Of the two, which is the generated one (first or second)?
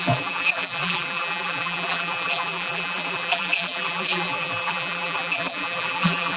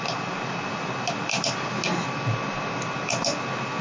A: first